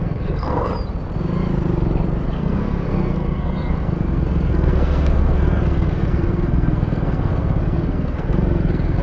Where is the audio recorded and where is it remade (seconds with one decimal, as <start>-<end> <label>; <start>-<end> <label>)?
0.0-0.7 remade; 0.7-2.3 recorded; 2.3-9.0 remade